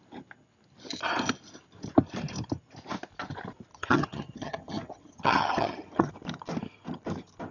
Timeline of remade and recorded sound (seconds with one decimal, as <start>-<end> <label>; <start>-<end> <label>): 0.0-3.7 recorded; 3.7-6.1 remade; 6.1-7.5 recorded